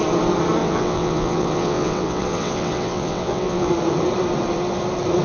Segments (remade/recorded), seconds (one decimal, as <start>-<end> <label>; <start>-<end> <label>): 0.0-0.6 recorded; 0.6-3.7 remade; 3.7-5.2 recorded